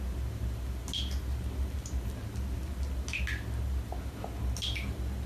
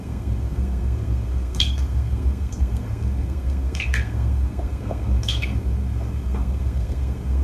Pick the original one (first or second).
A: first